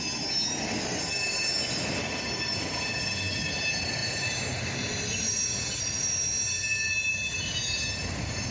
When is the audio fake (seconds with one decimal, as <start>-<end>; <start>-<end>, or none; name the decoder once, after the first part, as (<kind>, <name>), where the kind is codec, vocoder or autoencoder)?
none